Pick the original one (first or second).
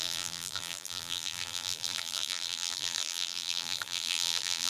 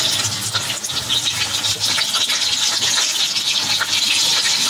second